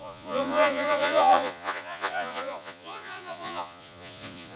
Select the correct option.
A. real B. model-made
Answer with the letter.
B